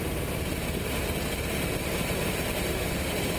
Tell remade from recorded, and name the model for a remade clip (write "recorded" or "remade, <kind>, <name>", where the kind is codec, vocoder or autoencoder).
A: remade, vocoder, BigVGAN v2